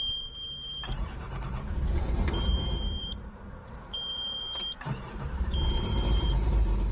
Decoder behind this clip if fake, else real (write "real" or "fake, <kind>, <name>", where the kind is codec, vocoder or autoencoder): fake, vocoder, BigVGAN v2